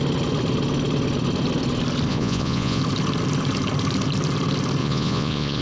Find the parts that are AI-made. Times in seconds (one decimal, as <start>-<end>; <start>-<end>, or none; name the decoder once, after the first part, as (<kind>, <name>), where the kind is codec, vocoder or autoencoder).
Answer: 2.1-2.8 (vocoder, Vocos); 4.8-5.6